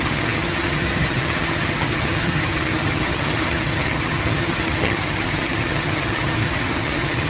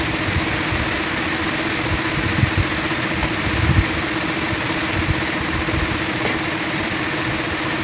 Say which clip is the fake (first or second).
first